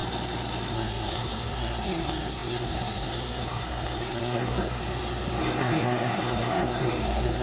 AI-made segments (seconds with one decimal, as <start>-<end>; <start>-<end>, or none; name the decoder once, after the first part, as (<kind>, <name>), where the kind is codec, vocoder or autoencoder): 0.7-4.8 (codec, SNAC); 5.4-7.4